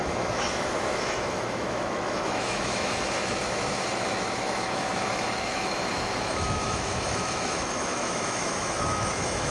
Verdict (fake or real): fake